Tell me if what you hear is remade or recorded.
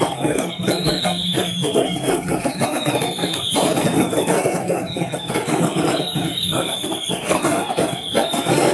remade